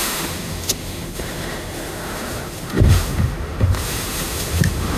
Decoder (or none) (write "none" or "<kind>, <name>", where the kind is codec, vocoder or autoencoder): autoencoder, DAC-VAE